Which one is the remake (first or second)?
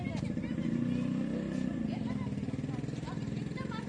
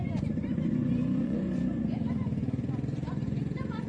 second